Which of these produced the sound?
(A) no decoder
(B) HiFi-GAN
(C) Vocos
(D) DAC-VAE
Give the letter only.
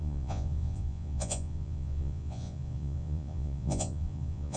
C